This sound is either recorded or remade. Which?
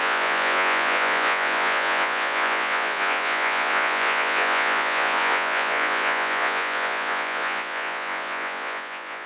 remade